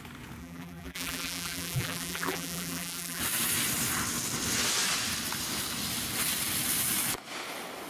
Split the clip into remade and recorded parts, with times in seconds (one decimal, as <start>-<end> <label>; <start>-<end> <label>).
0.0-0.4 recorded; 0.4-3.2 remade; 3.2-7.9 recorded